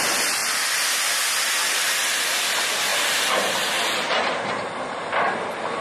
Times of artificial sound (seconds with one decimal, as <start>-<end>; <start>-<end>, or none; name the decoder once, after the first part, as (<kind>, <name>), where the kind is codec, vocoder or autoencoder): none